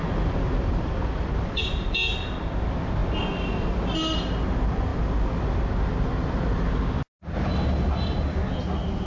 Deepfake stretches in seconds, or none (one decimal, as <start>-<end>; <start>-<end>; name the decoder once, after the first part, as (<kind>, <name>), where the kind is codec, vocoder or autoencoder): none